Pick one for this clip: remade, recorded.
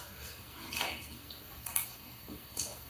remade